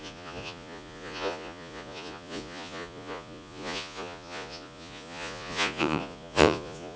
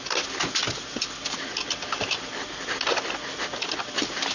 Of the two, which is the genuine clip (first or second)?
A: second